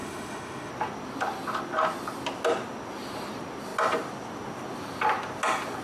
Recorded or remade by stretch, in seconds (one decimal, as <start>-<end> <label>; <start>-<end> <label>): 0.0-0.7 remade; 0.7-5.8 recorded